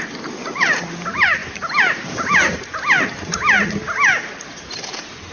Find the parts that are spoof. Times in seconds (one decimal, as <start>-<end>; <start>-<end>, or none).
none